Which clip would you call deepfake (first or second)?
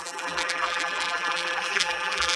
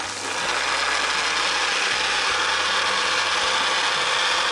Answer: first